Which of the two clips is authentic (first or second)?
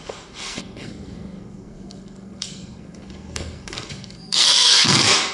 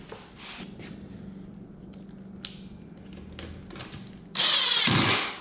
second